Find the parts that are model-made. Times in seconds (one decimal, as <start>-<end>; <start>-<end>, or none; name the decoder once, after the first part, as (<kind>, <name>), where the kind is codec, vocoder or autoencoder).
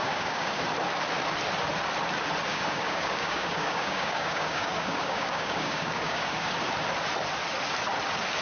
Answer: 0.0-0.6 (codec, DAC); 2.5-6.5